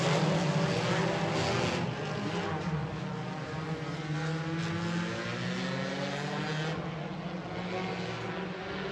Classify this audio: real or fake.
real